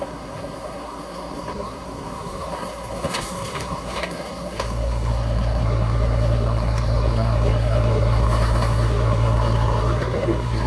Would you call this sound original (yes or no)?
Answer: no